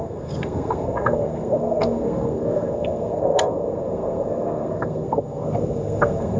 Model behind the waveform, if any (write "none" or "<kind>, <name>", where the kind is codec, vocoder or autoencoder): codec, SNAC